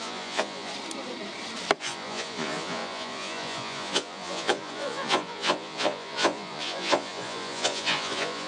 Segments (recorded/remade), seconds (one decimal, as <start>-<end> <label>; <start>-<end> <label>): 0.0-0.7 remade; 0.7-1.8 recorded; 1.8-8.5 remade